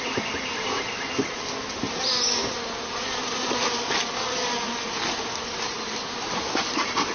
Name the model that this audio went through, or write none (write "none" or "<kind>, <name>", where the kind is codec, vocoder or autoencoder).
none